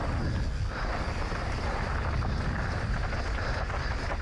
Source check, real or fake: real